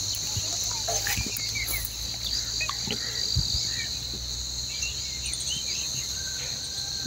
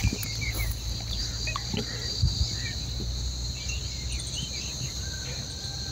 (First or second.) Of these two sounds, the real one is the first